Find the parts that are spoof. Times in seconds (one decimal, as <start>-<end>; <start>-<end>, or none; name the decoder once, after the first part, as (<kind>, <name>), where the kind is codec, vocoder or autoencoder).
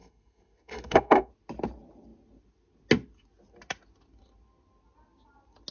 0.0-1.3 (codec, SNAC)